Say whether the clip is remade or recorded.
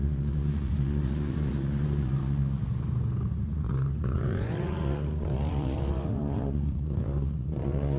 remade